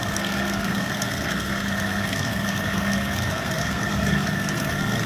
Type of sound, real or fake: fake